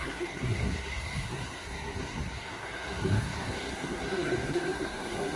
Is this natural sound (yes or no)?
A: no